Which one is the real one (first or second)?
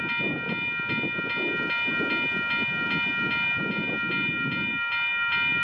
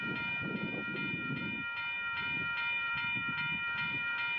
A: first